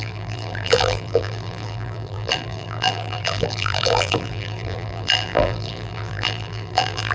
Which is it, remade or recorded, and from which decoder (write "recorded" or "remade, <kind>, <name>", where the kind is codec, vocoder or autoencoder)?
remade, vocoder, BigVGAN v2